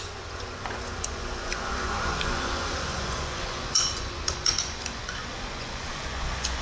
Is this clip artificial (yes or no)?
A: yes